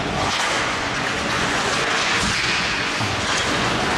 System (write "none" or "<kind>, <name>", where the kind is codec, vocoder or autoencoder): vocoder, Vocos